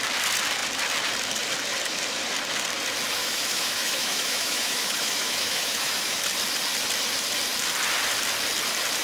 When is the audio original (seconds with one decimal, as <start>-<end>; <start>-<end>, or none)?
0.0-3.2; 6.2-9.0

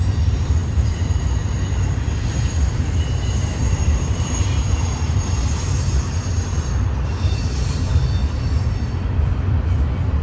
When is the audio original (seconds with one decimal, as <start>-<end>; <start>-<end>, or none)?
7.9-10.2

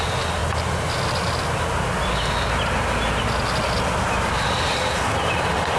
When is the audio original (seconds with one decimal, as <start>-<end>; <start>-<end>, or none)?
0.0-5.8

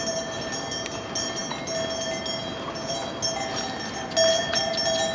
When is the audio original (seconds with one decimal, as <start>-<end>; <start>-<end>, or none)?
0.0-5.1

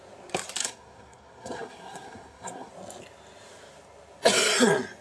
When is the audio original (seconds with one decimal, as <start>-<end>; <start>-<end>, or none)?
0.0-0.6; 2.7-5.0

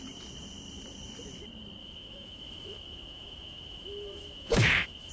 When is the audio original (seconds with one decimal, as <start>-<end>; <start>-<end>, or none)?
0.0-1.8

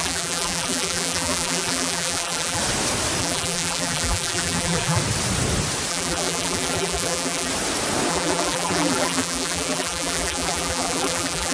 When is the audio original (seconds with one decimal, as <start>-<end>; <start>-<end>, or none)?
2.6-3.2; 5.0-5.9; 7.5-8.1